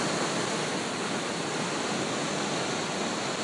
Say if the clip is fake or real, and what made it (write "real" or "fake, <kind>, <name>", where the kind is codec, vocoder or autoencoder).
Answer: real